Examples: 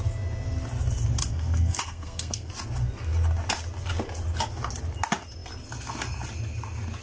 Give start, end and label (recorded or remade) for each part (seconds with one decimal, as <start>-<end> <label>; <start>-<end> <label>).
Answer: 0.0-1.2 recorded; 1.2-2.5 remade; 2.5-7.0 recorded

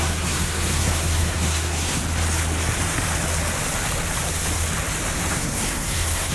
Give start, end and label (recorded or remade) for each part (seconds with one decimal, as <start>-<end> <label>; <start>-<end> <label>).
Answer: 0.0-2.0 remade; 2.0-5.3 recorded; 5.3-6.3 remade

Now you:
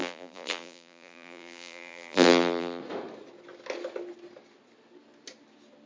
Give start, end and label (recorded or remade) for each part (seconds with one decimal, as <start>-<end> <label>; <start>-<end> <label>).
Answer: 0.0-2.8 remade; 2.8-5.9 recorded

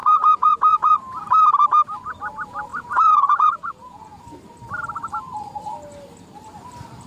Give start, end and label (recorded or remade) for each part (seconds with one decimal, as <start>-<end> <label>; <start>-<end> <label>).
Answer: 0.0-1.0 remade; 1.0-2.7 recorded; 2.7-4.2 remade; 4.2-7.1 recorded

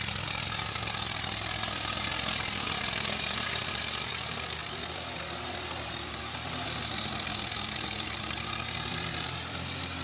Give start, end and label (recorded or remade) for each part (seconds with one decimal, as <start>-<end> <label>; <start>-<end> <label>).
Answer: 0.0-10.0 remade

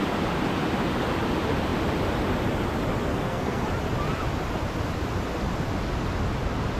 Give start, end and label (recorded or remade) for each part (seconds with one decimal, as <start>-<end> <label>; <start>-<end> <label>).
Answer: 0.0-3.1 recorded; 3.1-3.6 remade; 3.6-6.8 recorded

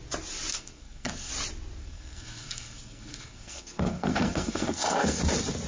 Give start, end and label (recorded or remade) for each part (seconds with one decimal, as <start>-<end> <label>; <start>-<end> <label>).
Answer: 0.0-0.5 recorded; 0.5-1.3 remade; 1.3-1.8 recorded; 1.8-5.2 remade; 5.2-5.7 recorded